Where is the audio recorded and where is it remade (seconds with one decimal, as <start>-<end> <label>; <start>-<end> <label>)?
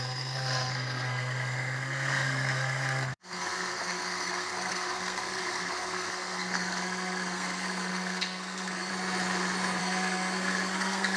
0.0-8.9 remade; 8.9-9.8 recorded; 9.8-11.2 remade